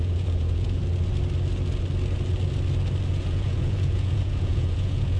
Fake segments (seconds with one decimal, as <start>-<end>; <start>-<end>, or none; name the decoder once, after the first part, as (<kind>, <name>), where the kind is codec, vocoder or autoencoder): 0.0-0.8 (vocoder, Vocos); 3.1-5.2